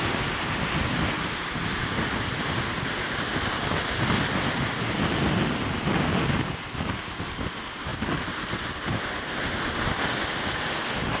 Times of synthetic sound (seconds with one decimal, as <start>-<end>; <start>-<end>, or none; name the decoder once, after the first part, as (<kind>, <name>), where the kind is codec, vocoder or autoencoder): none